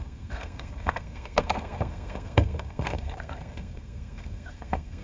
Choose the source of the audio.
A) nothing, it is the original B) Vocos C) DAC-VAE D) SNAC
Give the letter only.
D